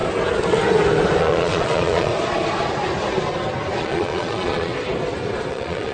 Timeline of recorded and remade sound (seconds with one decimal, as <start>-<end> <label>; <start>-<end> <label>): 0.0-1.2 recorded; 1.2-2.1 remade; 2.1-3.8 recorded; 3.8-4.7 remade; 4.7-5.5 recorded; 5.5-5.9 remade